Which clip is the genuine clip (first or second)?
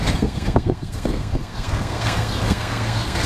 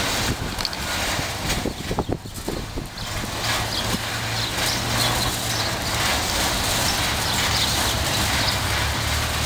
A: second